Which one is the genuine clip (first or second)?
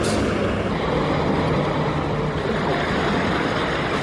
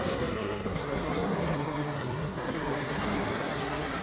first